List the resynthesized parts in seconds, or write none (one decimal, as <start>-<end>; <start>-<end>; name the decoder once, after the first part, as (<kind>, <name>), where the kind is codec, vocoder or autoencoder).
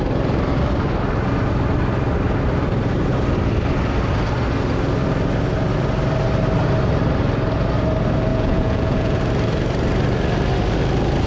8.3-9.2 (vocoder, Vocos)